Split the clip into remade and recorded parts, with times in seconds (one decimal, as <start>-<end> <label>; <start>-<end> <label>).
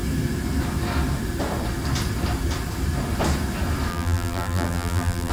0.0-3.9 recorded; 3.9-5.3 remade